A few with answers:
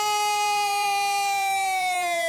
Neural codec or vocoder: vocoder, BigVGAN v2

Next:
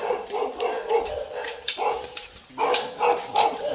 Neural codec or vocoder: none